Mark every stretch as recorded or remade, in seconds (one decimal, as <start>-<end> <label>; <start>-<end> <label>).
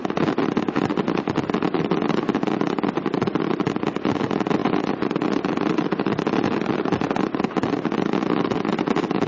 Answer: 0.0-9.3 recorded